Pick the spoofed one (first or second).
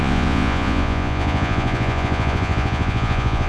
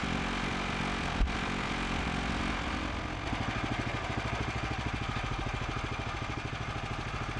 first